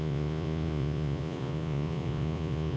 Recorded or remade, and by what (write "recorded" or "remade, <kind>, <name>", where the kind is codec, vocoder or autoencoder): remade, vocoder, Vocos